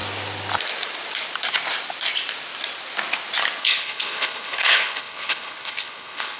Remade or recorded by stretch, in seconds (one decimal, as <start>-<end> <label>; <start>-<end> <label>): 0.0-3.6 recorded; 3.6-6.4 remade